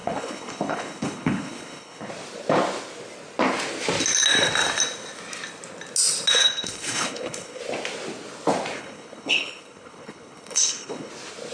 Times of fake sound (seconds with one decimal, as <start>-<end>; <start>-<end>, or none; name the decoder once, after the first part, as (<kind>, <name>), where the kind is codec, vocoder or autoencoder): 0.0-2.1 (codec, HILCodec); 6.4-7.6; 8.8-11.1